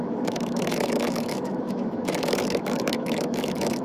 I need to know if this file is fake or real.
fake